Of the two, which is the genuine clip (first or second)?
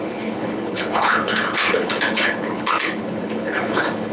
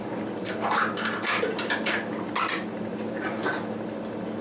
second